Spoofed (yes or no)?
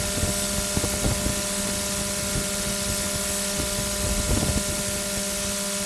no